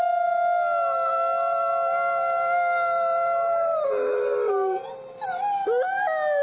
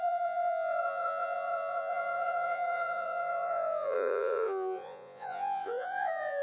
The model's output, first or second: second